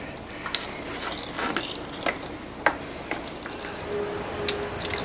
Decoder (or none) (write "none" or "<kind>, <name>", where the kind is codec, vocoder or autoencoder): none